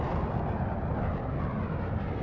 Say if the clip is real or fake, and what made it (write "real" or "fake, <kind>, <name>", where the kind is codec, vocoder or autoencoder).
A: real